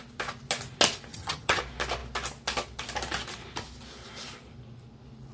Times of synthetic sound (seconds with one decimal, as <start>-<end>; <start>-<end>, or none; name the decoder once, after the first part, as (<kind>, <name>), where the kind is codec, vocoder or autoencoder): 1.1-1.6 (vocoder, HiFi-GAN)